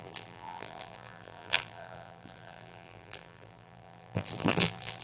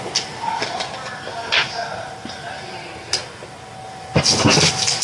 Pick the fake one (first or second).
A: first